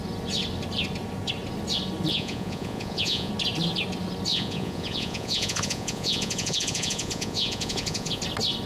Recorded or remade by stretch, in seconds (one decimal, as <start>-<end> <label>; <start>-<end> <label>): 0.0-2.1 recorded; 2.1-3.3 remade; 3.3-4.3 recorded; 4.3-8.2 remade; 8.2-8.7 recorded